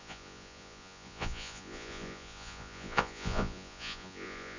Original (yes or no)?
no